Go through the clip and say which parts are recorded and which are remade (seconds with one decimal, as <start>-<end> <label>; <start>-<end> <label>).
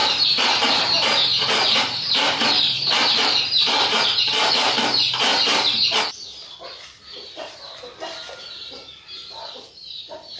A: 0.0-4.5 remade; 4.5-10.4 recorded